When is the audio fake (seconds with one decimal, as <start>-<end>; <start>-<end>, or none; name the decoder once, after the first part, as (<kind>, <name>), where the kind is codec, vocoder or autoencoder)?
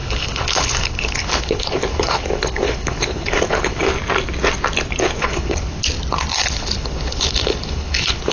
0.0-3.9 (codec, HILCodec); 5.2-5.8; 6.4-8.3